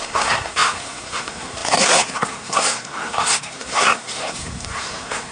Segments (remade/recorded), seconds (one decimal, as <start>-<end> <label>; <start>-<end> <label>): 0.0-5.3 remade